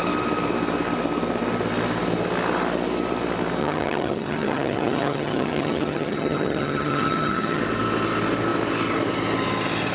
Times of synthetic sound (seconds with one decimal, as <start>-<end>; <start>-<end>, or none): 3.6-7.6

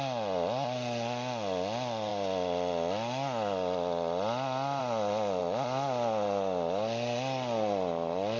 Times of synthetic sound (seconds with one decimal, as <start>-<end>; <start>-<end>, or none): none

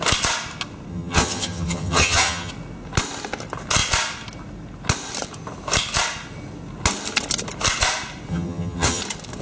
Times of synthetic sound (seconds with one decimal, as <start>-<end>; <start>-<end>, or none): 0.9-2.5; 8.3-9.0

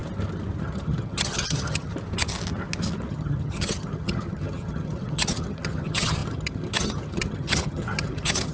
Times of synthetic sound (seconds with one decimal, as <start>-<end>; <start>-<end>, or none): 0.6-1.9; 3.1-8.5

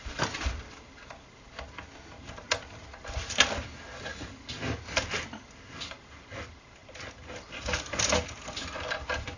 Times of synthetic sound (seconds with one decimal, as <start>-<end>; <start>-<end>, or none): none